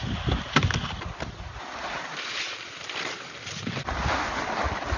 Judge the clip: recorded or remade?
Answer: recorded